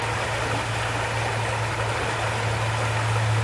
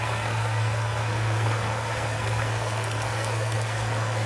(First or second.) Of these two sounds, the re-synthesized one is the second